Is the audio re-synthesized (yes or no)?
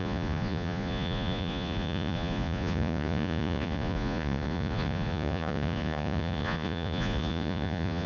yes